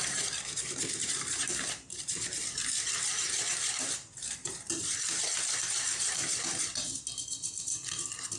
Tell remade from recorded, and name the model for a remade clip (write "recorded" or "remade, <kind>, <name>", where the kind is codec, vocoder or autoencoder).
remade, vocoder, BigVGAN v2